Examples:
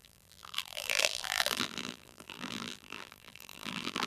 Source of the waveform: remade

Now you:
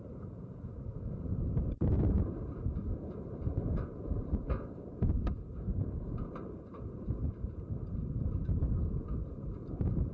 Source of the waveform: remade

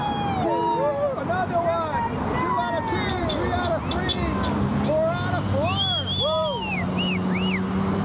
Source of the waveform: recorded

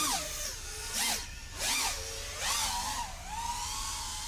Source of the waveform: recorded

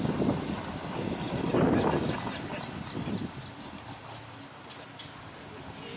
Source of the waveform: recorded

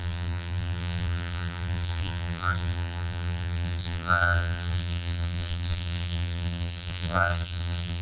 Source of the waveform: remade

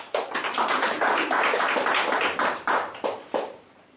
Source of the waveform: remade